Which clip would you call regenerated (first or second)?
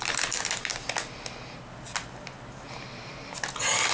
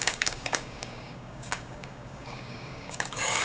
second